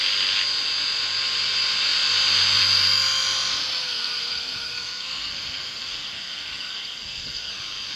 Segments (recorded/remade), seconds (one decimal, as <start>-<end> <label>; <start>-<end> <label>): 0.0-3.8 recorded; 3.8-7.5 remade; 7.5-8.0 recorded